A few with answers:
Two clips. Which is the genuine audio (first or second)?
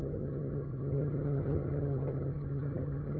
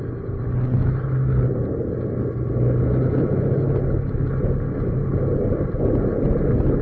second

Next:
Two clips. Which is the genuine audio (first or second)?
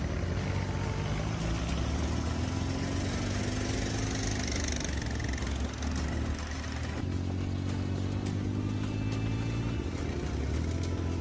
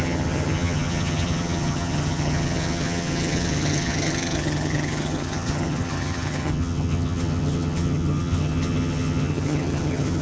first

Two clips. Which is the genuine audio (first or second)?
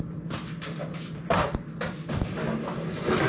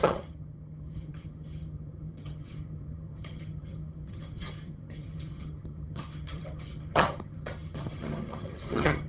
first